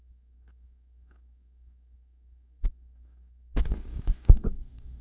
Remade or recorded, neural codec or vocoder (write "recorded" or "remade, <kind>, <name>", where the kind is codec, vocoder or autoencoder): remade, codec, DAC